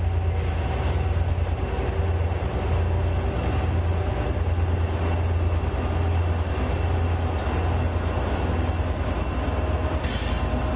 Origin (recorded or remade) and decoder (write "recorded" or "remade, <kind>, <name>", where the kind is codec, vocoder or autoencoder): recorded